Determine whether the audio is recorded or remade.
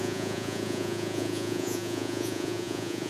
remade